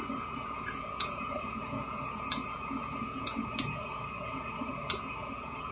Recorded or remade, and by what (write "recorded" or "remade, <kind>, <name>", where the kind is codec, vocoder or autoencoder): remade, vocoder, Vocos